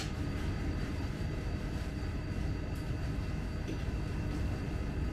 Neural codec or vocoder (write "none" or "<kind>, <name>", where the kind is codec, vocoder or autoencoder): none